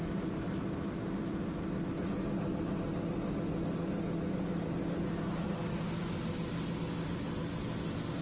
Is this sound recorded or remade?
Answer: recorded